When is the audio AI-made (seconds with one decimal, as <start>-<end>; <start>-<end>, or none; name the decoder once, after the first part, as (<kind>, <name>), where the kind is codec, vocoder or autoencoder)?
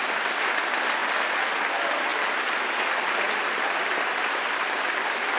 2.1-5.4 (vocoder, BigVGAN v2)